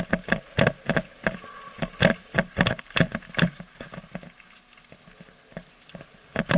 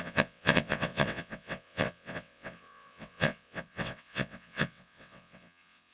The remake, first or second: second